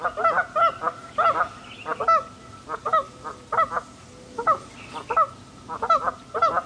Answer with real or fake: real